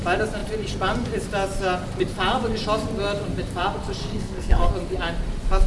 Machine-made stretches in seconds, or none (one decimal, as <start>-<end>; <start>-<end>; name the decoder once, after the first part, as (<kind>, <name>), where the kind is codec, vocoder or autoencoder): 4.0-4.7 (codec, SNAC)